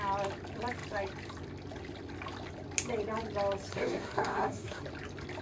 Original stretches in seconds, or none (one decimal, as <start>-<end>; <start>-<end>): 0.0-3.7; 4.8-5.4